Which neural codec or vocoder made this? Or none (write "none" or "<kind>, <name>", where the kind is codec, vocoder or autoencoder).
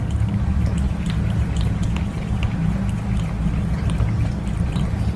none